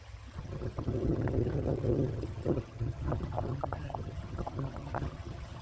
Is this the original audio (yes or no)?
no